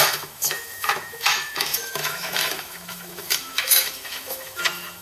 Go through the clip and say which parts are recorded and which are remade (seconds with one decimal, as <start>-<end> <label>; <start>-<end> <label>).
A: 0.0-5.0 remade